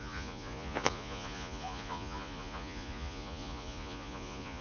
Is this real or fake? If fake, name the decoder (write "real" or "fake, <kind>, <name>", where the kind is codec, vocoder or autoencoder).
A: fake, vocoder, Vocos